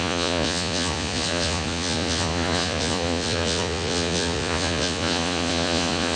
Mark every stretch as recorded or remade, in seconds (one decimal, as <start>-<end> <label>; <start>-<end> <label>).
0.0-6.2 remade